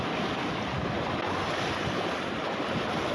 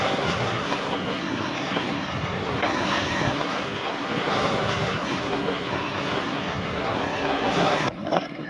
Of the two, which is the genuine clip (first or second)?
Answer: first